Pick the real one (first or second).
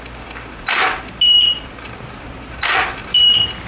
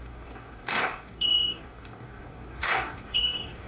first